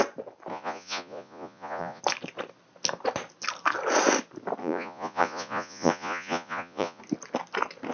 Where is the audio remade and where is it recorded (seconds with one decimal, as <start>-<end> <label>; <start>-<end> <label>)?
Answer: 0.0-0.5 recorded; 0.5-2.0 remade; 2.0-4.6 recorded; 4.6-7.0 remade; 7.0-7.9 recorded

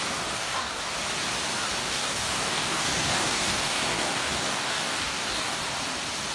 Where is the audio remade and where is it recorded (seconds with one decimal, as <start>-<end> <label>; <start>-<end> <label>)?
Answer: 0.0-0.4 recorded; 0.4-0.9 remade; 0.9-1.8 recorded; 1.8-5.6 remade; 5.6-6.3 recorded